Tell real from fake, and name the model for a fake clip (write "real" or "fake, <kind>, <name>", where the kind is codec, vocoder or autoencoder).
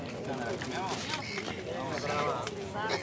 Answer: real